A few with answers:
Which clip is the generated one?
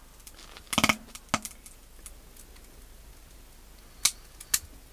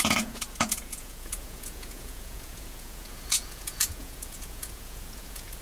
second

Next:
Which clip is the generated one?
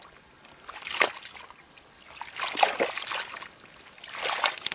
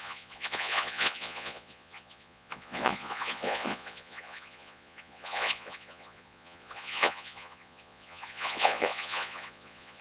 second